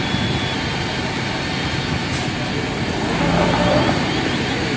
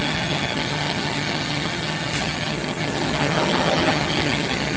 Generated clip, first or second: second